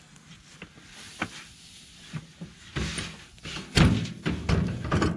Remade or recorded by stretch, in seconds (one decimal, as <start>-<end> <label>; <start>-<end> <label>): 0.0-5.2 recorded